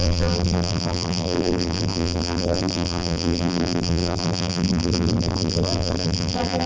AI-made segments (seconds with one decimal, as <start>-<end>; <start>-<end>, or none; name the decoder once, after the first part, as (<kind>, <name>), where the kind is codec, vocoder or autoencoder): 0.0-6.7 (vocoder, BigVGAN v2)